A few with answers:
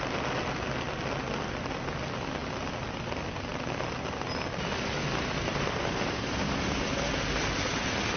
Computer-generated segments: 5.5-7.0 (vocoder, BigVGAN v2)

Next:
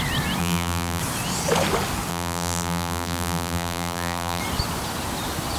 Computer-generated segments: 0.4-1.0 (vocoder, BigVGAN v2); 2.1-4.4

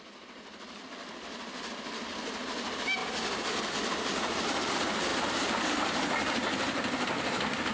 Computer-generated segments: 5.1-5.6 (vocoder, BigVGAN v2)